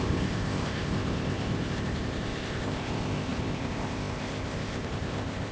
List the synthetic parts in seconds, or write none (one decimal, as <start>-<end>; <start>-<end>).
0.0-5.5